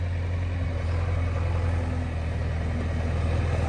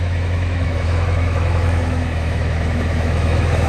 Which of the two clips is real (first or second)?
first